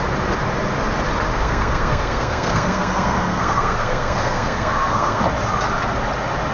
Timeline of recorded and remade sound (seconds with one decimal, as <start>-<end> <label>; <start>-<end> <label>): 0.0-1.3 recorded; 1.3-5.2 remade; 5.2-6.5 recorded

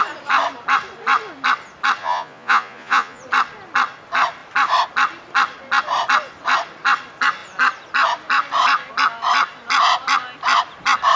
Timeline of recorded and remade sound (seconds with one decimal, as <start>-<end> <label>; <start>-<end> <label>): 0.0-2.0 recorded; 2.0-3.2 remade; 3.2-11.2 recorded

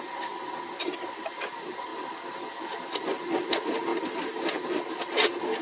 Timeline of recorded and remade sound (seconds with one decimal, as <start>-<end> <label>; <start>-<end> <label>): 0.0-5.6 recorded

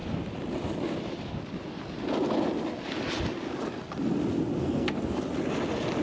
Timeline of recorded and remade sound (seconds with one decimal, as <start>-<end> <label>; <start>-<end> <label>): 0.0-4.6 recorded; 4.6-5.2 remade; 5.2-6.0 recorded